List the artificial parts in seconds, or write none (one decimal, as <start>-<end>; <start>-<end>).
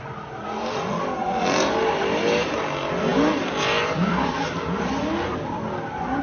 none